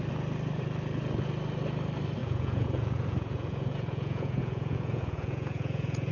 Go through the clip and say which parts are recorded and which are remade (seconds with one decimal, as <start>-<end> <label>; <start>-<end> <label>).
0.0-2.2 recorded; 2.2-6.1 remade